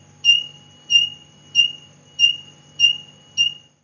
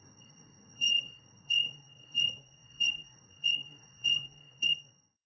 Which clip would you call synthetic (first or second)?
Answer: second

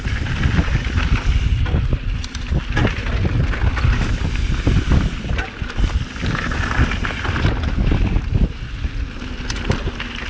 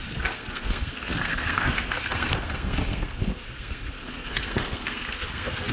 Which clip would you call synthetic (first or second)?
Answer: second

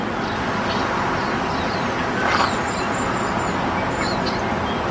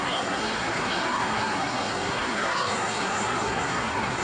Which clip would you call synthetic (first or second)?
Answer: second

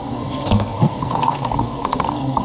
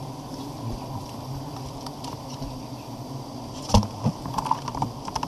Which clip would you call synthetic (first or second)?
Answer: first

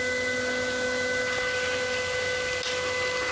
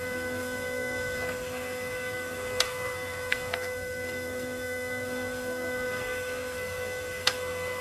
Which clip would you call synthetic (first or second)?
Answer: second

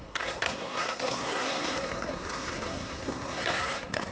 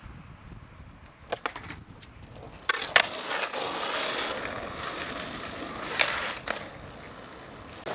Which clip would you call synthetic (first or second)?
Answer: first